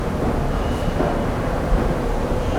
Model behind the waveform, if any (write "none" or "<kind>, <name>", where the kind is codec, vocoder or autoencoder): none